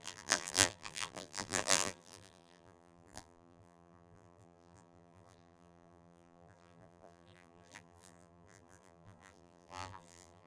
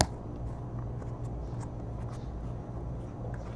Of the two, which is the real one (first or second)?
second